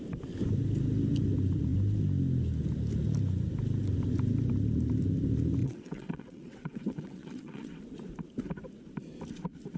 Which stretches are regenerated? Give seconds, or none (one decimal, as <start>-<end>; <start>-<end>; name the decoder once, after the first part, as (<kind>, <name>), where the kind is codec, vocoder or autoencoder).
5.6-7.8 (vocoder, WaveNeXt)

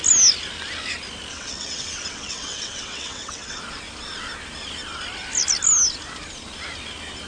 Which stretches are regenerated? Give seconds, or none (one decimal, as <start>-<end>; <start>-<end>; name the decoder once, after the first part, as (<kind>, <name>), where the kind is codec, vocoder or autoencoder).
1.3-3.6 (vocoder, WaveNeXt)

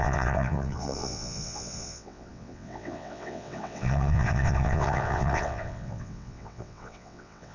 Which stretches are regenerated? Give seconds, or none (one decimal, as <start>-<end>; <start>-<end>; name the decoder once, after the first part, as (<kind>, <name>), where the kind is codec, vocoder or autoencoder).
0.0-7.5 (vocoder, WaveNeXt)

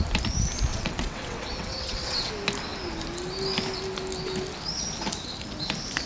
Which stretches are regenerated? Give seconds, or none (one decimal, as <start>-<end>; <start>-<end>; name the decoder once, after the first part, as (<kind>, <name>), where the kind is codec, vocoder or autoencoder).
0.7-2.3 (vocoder, WaveNeXt)

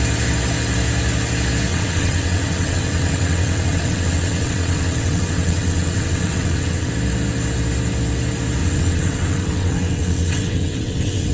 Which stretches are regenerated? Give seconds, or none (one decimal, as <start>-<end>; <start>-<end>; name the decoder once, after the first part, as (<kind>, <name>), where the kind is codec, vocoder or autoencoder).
1.7-6.9 (vocoder, WaveNeXt); 8.6-11.3

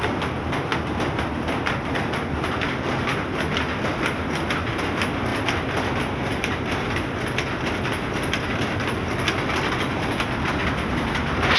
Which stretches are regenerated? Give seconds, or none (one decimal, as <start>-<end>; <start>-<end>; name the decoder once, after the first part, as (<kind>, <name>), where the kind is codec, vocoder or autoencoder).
none